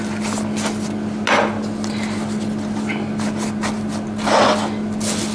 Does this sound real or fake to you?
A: real